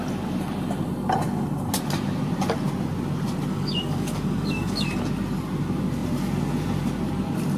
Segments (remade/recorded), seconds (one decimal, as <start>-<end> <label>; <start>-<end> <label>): 0.0-3.5 recorded; 3.5-5.0 remade; 5.0-7.6 recorded